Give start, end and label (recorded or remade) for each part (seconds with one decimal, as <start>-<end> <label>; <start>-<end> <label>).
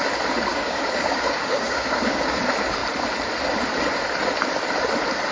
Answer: 0.0-0.5 recorded; 0.5-2.4 remade; 2.4-5.3 recorded